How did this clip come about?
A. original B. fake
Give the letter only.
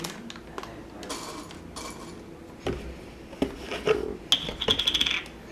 A